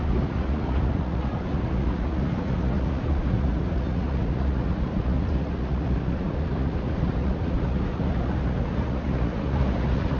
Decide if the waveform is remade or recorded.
remade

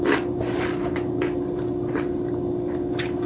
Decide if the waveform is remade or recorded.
recorded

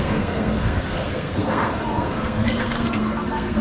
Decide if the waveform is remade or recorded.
remade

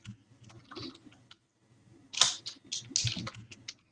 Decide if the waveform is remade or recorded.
recorded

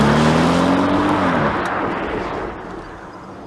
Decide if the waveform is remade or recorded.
recorded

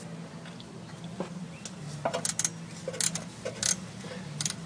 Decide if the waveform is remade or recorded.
recorded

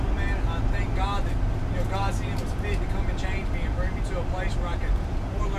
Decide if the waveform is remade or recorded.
recorded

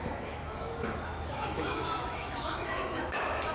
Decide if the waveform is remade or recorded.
remade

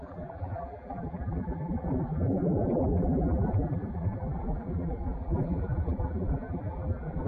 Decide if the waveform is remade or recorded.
remade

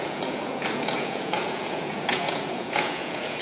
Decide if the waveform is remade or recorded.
remade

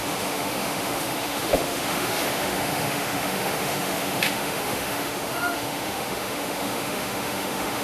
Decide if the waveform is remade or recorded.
remade